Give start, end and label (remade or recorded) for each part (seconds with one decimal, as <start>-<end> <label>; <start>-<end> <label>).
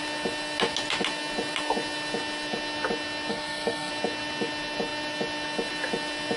0.0-3.3 recorded; 3.3-3.9 remade; 3.9-6.4 recorded